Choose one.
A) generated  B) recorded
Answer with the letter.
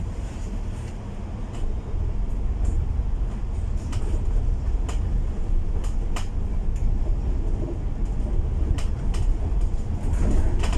B